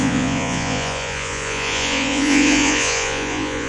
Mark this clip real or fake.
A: fake